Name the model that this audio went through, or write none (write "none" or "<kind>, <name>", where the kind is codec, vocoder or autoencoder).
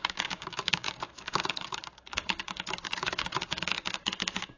codec, DAC